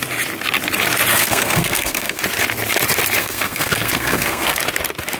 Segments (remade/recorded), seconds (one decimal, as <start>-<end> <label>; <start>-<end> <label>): 0.0-1.1 recorded; 1.1-2.2 remade; 2.2-3.2 recorded; 3.2-4.6 remade; 4.6-5.2 recorded